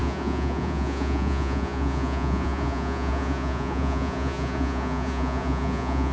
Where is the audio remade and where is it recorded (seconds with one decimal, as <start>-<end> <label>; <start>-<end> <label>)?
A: 0.0-6.1 remade